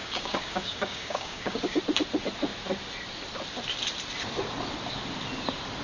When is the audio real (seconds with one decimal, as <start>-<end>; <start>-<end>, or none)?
1.8-5.8